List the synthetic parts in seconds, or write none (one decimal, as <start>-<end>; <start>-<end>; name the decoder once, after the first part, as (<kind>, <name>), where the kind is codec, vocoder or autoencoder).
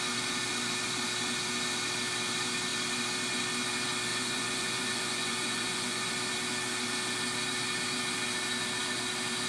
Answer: 4.1-6.1 (vocoder, Vocos)